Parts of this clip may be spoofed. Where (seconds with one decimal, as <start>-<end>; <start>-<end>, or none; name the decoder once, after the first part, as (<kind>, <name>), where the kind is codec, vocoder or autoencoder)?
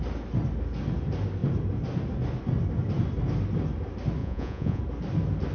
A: 4.2-4.8 (vocoder, Vocos)